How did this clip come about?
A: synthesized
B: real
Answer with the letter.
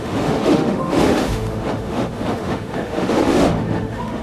A